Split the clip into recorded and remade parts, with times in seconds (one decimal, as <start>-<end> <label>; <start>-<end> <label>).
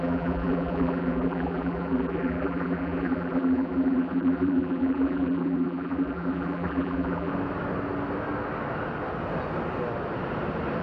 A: 0.0-7.3 remade; 7.3-10.8 recorded